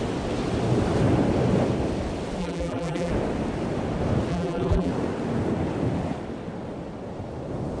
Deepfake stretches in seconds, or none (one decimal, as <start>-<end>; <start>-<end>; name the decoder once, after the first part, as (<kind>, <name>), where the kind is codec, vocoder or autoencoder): 2.4-3.1 (vocoder, BigVGAN v2); 4.3-4.9